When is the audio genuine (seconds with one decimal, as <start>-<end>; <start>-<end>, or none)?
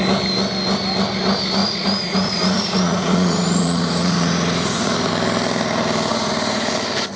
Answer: 0.0-1.6; 5.1-6.1; 6.7-7.2